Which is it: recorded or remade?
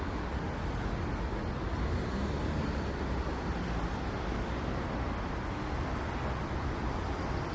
recorded